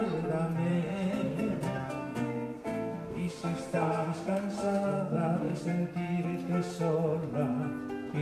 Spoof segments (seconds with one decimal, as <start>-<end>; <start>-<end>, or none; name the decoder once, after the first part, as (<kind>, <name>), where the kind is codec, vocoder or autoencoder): 0.7-5.6 (codec, SNAC)